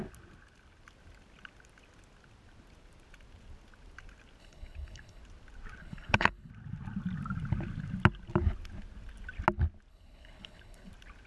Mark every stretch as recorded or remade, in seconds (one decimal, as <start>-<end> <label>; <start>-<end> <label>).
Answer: 0.0-4.4 recorded; 4.4-5.2 remade; 5.2-5.8 recorded; 5.8-6.5 remade; 6.5-9.9 recorded; 9.9-10.9 remade; 10.9-11.3 recorded